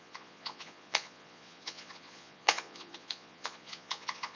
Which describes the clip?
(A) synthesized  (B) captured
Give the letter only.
A